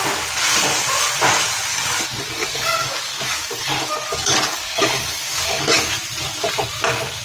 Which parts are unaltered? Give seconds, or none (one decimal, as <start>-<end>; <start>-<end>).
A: 0.0-1.7; 5.9-7.2